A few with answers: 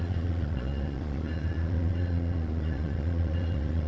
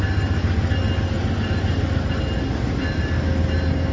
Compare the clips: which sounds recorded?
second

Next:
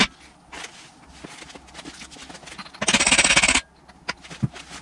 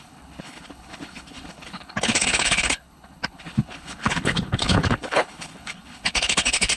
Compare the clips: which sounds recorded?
first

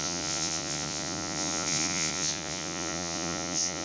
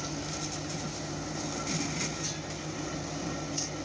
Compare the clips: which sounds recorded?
second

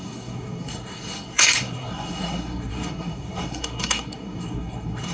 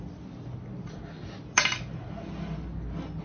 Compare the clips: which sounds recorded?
second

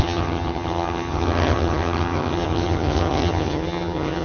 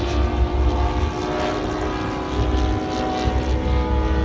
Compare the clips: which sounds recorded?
second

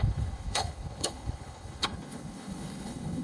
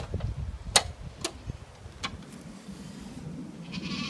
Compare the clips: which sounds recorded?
second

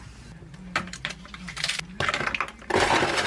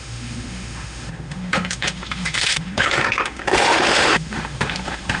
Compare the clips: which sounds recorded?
first